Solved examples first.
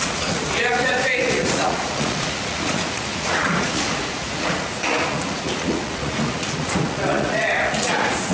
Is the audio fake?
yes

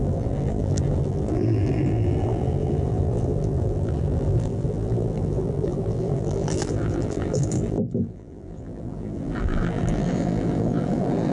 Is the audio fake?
yes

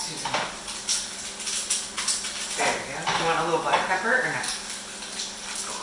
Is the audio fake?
no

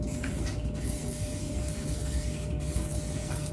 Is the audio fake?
yes